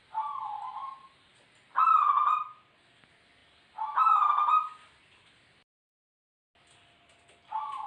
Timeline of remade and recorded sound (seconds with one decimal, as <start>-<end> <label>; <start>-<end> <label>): 0.0-7.9 recorded